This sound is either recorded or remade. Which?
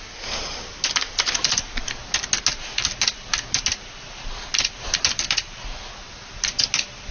recorded